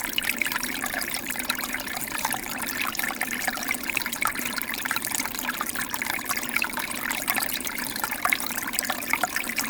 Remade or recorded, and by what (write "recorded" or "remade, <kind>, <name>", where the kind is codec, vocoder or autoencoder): remade, vocoder, BigVGAN v2